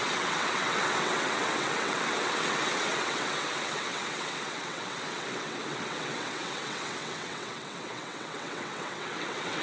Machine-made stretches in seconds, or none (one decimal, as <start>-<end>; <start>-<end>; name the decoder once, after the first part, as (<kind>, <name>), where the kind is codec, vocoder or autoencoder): 0.0-9.6 (vocoder, WaveNeXt)